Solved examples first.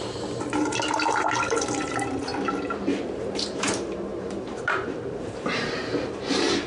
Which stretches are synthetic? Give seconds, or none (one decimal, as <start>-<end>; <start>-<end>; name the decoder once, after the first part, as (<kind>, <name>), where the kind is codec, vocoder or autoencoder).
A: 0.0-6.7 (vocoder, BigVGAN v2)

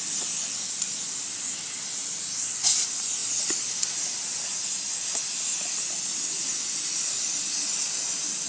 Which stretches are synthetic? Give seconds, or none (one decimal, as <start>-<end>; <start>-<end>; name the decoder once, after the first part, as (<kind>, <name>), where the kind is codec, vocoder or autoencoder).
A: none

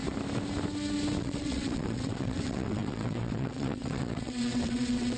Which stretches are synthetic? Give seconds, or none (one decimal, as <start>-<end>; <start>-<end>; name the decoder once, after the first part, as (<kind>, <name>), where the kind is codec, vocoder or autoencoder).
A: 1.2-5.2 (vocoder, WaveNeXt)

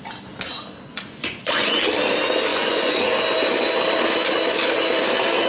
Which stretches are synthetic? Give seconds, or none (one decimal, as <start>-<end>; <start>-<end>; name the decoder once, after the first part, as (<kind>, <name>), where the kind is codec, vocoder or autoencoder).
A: 0.9-1.8 (vocoder, Vocos); 2.5-3.1